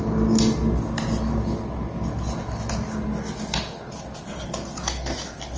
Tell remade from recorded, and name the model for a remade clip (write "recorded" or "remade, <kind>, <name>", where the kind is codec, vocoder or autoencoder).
recorded